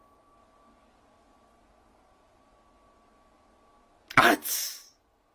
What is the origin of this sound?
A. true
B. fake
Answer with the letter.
A